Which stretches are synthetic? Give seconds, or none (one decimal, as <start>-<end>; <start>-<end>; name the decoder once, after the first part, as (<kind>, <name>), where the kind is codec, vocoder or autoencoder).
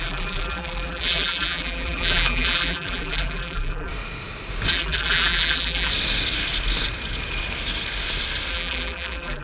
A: 0.0-3.9 (vocoder, BigVGAN v2); 4.7-5.9; 8.5-9.4